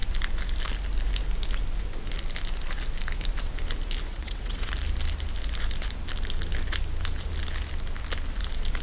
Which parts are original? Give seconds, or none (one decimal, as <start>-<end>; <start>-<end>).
0.0-4.1; 4.7-8.8